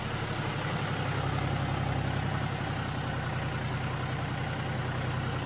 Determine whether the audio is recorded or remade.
recorded